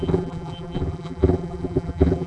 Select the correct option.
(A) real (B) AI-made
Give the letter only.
B